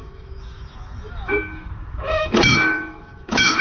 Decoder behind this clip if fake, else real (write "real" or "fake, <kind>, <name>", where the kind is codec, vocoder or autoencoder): fake, autoencoder, DAC-VAE